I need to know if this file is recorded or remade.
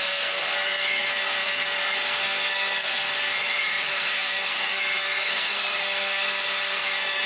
remade